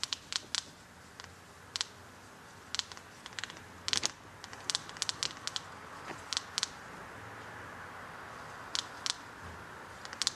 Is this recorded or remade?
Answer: recorded